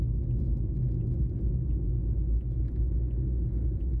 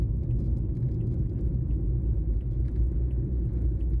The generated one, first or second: second